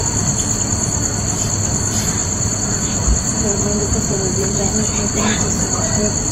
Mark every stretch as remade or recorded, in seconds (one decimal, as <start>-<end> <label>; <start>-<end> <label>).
0.0-2.2 recorded; 2.2-4.6 remade; 4.6-6.3 recorded